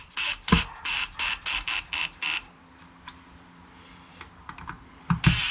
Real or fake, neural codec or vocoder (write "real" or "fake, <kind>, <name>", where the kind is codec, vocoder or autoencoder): real